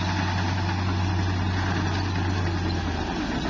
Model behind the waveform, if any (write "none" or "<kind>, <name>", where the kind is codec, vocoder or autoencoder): none